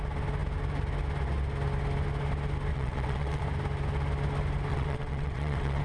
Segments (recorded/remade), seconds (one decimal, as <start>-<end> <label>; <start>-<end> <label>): 0.0-2.7 recorded; 2.7-3.4 remade; 3.4-4.7 recorded; 4.7-5.8 remade

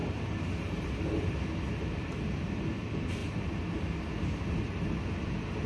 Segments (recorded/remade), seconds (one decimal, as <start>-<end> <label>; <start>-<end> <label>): 0.0-5.7 recorded

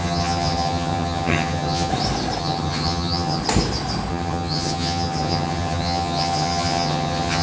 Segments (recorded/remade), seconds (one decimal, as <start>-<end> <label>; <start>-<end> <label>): 0.0-1.9 remade; 1.9-2.4 recorded; 2.4-3.4 remade; 3.4-4.1 recorded; 4.1-7.4 remade

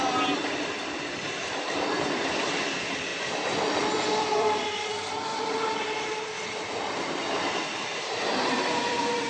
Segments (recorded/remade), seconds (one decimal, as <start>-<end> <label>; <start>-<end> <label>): 0.0-5.3 remade; 5.3-7.3 recorded; 7.3-9.3 remade

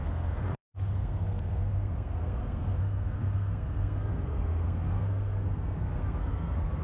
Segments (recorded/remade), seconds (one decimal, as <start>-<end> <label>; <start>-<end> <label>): 0.0-6.8 remade

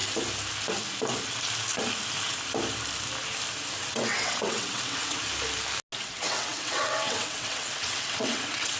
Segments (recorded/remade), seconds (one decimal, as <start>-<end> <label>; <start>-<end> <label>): 0.0-3.8 recorded; 3.8-5.2 remade; 5.2-6.0 recorded; 6.0-8.8 remade

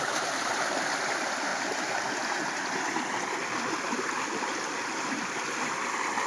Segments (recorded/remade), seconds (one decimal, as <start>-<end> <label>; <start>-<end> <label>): 0.0-6.3 recorded